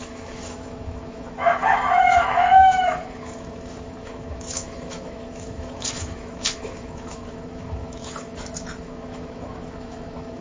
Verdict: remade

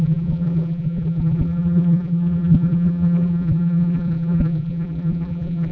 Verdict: remade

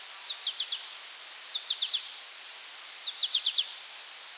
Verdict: recorded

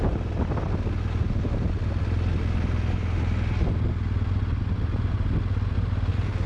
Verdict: recorded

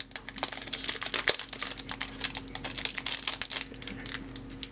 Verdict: recorded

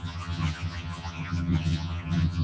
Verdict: remade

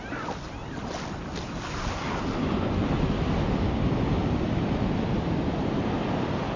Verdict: recorded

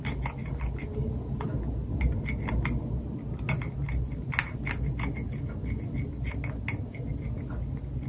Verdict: recorded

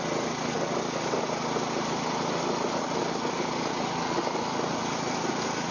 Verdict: recorded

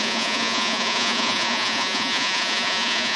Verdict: remade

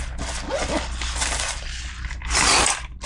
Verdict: recorded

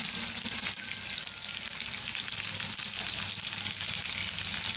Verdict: recorded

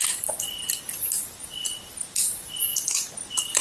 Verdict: recorded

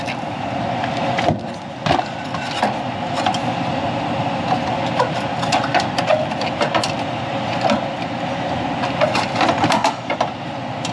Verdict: recorded